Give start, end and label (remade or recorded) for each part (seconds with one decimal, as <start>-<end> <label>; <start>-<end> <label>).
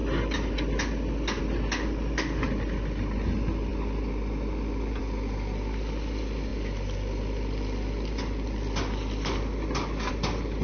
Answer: 0.0-10.6 recorded